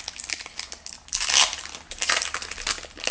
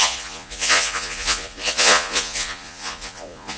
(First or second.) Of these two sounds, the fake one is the second